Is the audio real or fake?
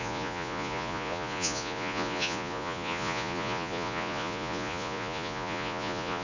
fake